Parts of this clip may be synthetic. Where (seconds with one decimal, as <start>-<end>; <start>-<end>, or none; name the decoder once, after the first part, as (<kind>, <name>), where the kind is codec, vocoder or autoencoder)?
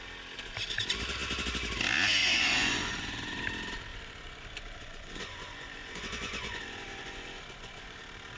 2.2-3.4 (vocoder, Vocos); 3.9-8.0